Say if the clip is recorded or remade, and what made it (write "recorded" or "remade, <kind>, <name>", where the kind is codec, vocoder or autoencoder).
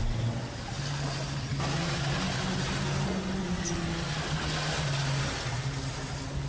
recorded